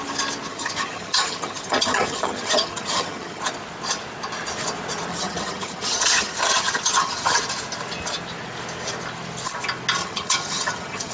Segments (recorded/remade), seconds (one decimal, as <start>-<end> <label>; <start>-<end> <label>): 0.0-0.5 recorded; 0.5-3.4 remade; 3.4-5.1 recorded; 5.1-7.4 remade; 7.4-10.0 recorded; 10.0-11.1 remade